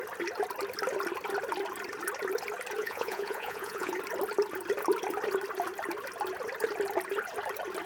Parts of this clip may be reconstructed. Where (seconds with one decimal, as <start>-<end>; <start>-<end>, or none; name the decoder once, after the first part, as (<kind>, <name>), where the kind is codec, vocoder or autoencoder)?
2.8-3.9 (vocoder, Vocos)